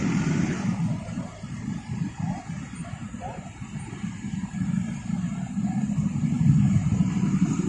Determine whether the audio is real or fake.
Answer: fake